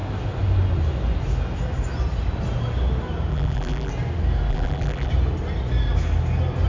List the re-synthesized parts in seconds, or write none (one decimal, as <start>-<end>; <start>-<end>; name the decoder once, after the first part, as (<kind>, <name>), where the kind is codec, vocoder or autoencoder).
3.3-3.9 (vocoder, BigVGAN v2); 4.5-5.1